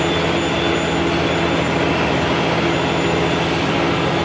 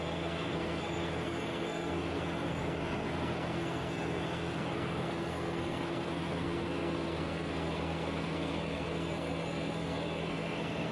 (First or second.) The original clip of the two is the first